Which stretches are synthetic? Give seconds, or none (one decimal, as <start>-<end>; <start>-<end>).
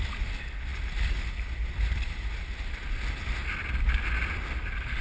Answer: none